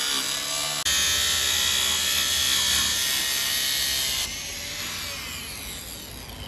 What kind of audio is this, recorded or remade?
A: recorded